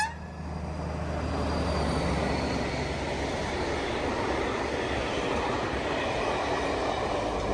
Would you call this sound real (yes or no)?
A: yes